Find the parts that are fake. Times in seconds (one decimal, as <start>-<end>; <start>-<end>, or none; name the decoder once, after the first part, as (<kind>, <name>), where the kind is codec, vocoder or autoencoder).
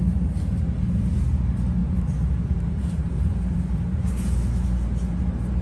1.8-3.9 (vocoder, BigVGAN v2)